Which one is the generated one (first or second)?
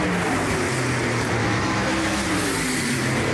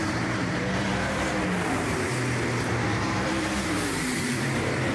second